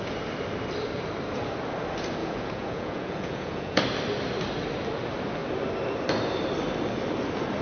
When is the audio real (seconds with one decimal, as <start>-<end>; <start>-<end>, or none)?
0.0-2.2; 3.8-7.6